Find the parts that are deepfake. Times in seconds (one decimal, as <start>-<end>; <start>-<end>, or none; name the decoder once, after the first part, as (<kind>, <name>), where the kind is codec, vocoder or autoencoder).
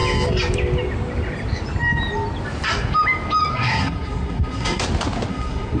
3.5-4.8 (codec, SNAC); 5.3-5.8